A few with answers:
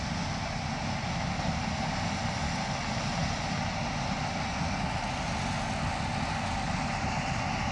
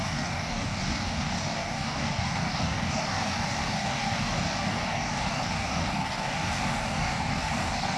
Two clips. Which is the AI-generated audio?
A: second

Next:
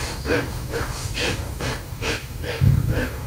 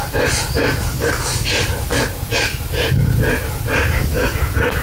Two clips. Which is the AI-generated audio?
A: first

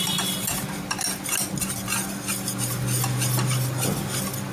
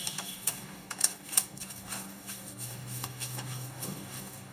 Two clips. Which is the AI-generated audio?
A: second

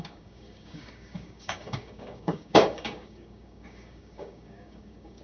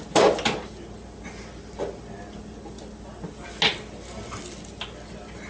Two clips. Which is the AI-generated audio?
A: first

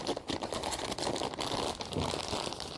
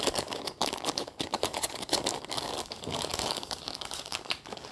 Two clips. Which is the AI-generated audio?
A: second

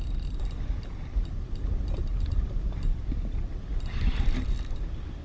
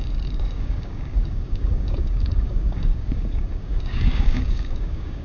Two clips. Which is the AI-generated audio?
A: second